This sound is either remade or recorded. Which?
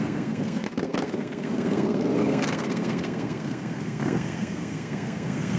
remade